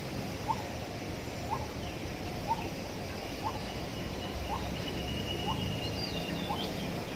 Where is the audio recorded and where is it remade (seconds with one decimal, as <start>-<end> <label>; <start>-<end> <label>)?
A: 0.0-2.0 recorded; 2.0-2.6 remade; 2.6-3.9 recorded; 3.9-5.1 remade; 5.1-7.2 recorded